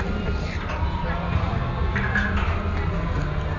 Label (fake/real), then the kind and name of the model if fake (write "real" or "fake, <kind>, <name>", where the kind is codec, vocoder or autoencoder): real